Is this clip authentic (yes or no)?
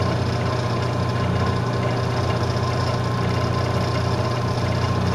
yes